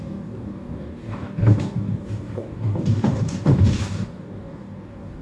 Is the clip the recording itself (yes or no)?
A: no